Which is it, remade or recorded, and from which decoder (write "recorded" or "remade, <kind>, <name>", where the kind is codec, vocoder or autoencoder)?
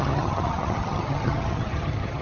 remade, vocoder, HiFi-GAN